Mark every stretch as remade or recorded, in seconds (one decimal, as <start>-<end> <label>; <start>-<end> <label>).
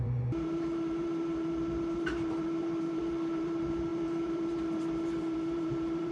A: 0.0-6.1 remade